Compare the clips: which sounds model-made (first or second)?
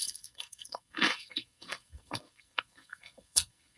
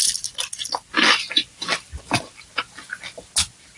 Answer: first